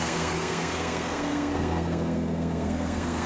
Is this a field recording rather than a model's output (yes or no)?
no